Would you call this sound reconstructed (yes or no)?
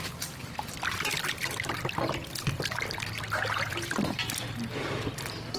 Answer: no